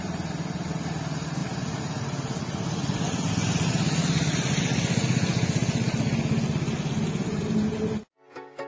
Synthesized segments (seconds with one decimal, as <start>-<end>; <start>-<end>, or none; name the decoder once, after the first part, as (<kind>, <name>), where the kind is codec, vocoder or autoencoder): none